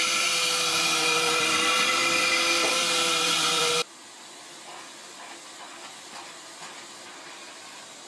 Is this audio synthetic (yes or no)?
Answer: yes